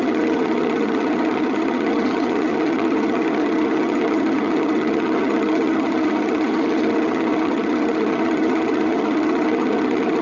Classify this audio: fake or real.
fake